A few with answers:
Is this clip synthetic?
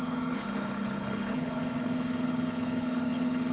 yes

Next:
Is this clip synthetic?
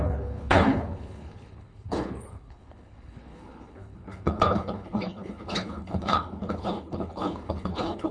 yes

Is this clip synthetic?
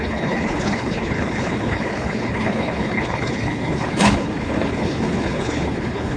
yes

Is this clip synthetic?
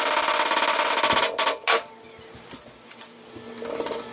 no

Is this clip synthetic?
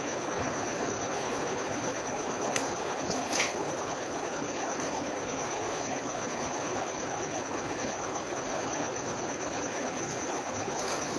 yes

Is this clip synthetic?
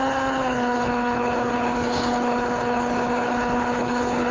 yes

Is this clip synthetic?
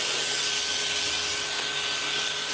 no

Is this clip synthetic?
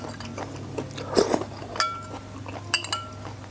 no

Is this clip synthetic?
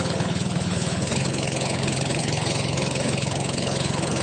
yes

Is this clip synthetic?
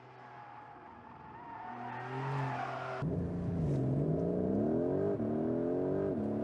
no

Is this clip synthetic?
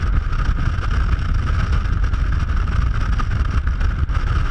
no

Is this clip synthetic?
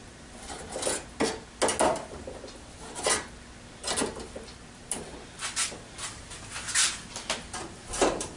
no